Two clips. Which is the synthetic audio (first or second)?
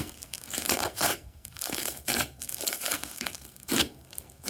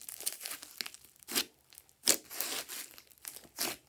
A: first